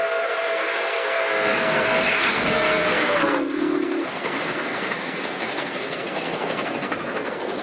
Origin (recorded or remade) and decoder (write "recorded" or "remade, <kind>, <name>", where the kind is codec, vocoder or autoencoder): remade, codec, SNAC